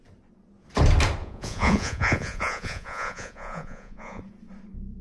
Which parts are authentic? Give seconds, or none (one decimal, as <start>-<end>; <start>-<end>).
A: 0.0-1.2; 4.2-5.0